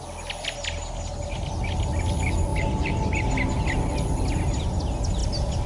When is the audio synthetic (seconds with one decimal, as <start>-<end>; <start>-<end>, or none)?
2.5-3.3